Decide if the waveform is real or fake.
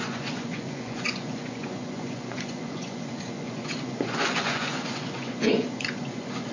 fake